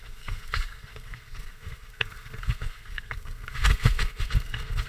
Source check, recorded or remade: remade